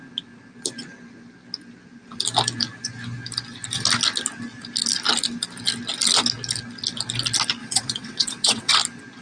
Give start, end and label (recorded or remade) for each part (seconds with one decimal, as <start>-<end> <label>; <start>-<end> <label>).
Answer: 0.0-7.6 recorded; 7.6-8.7 remade; 8.7-9.2 recorded